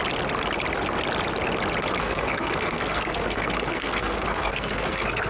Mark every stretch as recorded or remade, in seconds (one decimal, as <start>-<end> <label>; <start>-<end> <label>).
0.0-2.0 recorded; 2.0-5.3 remade